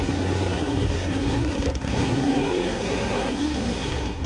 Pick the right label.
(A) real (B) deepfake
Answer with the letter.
B